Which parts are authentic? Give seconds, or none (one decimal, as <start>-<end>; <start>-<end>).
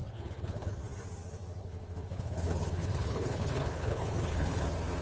0.7-1.6; 4.6-5.0